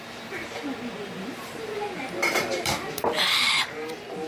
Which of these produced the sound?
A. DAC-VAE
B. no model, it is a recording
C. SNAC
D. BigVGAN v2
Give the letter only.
D